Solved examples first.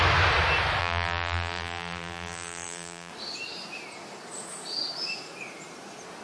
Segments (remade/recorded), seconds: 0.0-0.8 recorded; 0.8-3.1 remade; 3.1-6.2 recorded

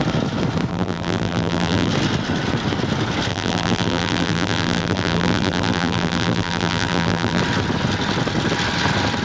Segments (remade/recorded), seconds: 0.0-0.7 recorded; 0.7-1.9 remade; 1.9-3.3 recorded; 3.3-7.4 remade; 7.4-9.2 recorded

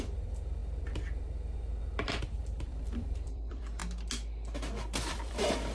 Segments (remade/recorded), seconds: 0.0-0.6 remade; 0.6-2.2 recorded; 2.2-3.8 remade; 3.8-5.1 recorded; 5.1-5.7 remade

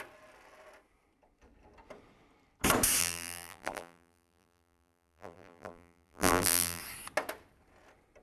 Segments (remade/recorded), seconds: 0.0-3.0 recorded; 3.0-6.8 remade; 6.8-8.2 recorded